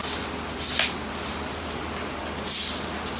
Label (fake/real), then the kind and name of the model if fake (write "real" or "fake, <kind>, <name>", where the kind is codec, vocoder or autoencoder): real